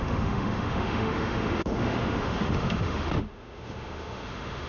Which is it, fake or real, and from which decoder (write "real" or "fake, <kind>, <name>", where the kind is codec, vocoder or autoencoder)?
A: fake, autoencoder, DAC-VAE